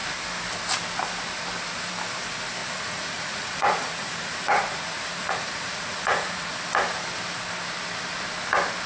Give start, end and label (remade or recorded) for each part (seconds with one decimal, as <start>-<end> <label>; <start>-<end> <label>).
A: 0.0-2.6 recorded; 2.6-6.5 remade; 6.5-8.9 recorded